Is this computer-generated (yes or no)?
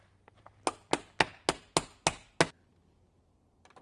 no